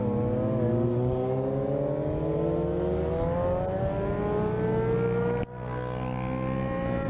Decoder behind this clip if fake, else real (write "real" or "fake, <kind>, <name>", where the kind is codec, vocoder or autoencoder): real